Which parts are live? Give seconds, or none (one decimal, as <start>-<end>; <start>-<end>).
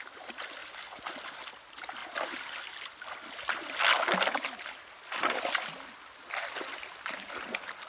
0.0-7.9